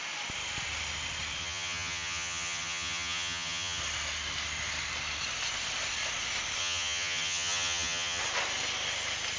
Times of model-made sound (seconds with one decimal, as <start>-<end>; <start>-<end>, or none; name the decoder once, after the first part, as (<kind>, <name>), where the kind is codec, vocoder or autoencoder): 1.4-3.8 (vocoder, HiFi-GAN); 6.6-8.2